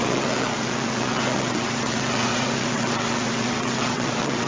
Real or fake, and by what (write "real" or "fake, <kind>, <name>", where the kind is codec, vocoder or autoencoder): fake, vocoder, WaveNeXt